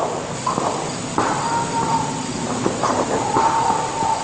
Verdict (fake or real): real